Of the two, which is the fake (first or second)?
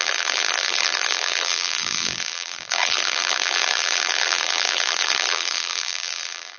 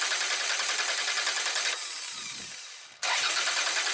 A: first